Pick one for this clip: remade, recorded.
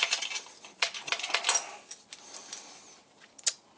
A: recorded